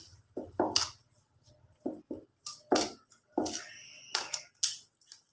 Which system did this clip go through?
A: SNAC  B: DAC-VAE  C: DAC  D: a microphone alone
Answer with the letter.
D